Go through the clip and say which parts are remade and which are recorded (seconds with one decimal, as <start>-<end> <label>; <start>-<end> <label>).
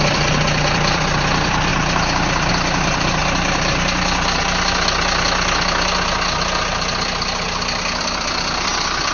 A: 0.0-1.7 remade; 1.7-2.5 recorded; 2.5-3.2 remade; 3.2-8.0 recorded; 8.0-9.1 remade